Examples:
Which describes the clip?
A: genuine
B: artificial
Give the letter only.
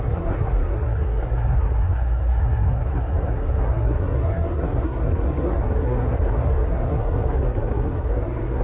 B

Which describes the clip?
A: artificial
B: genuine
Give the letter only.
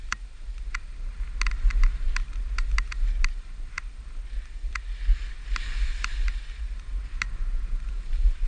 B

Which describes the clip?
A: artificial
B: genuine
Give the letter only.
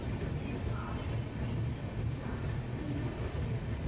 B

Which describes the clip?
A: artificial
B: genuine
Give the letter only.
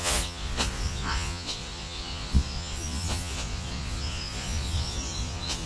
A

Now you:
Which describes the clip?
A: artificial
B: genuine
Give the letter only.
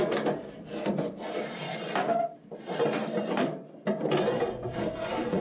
B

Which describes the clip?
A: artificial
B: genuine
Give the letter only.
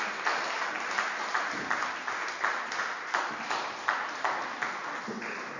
B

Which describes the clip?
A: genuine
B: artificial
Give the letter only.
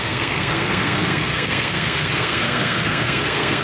B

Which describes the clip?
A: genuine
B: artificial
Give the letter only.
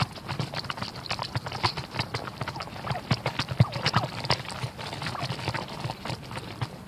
A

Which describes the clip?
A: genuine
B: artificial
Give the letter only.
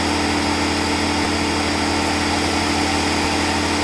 A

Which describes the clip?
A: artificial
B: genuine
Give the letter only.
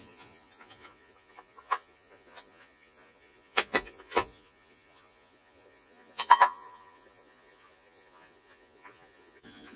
A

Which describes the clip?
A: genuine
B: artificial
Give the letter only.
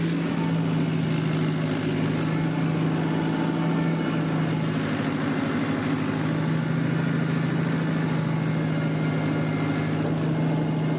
A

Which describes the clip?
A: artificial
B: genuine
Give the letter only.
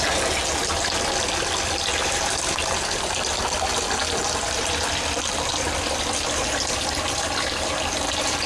B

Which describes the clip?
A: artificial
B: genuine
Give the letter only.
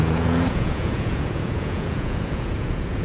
A